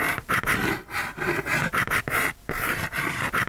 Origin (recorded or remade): remade